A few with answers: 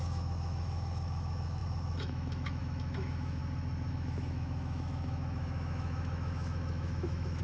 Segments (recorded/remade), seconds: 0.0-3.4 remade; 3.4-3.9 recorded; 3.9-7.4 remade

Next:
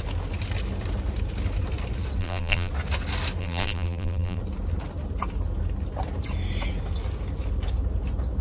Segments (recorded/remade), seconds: 0.0-2.2 recorded; 2.2-2.7 remade; 2.7-3.4 recorded; 3.4-4.4 remade; 4.4-8.4 recorded

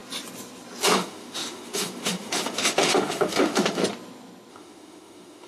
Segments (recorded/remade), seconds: 0.0-0.9 recorded; 0.9-3.8 remade; 3.8-4.5 recorded; 4.5-5.5 remade

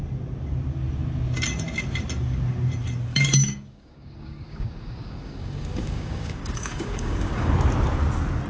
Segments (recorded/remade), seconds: 0.0-3.1 recorded; 3.1-7.5 remade; 7.5-8.5 recorded

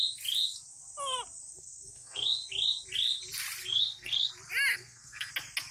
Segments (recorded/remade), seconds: 0.0-1.5 recorded; 1.5-2.5 remade; 2.5-3.6 recorded; 3.6-4.3 remade; 4.3-4.7 recorded; 4.7-5.3 remade; 5.3-5.7 recorded

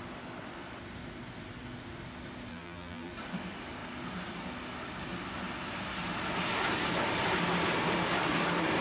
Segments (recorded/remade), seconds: 0.0-2.5 recorded; 2.5-3.1 remade; 3.1-8.8 recorded

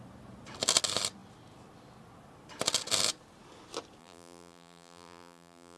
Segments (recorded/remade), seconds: 0.0-4.0 recorded; 4.0-5.8 remade